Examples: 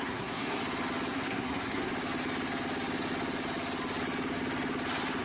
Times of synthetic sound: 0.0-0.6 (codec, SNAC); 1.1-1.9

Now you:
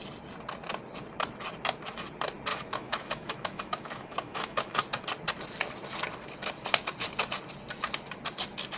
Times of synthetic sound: 2.5-4.7 (autoencoder, DAC-VAE)

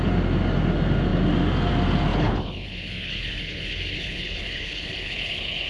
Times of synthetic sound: 2.1-5.7 (codec, HILCodec)

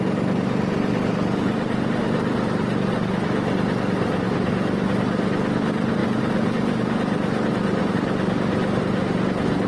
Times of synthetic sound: none

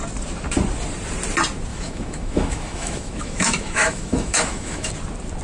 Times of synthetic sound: 1.7-4.9 (autoencoder, DAC-VAE)

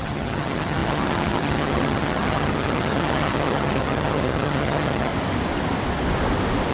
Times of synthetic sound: 0.0-5.1 (vocoder, HiFi-GAN)

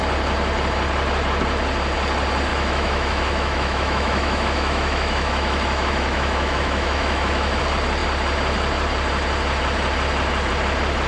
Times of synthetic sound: 2.5-7.6 (autoencoder, DAC-VAE)

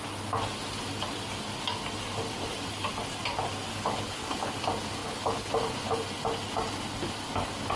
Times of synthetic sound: 3.7-4.5 (codec, HILCodec); 5.0-5.5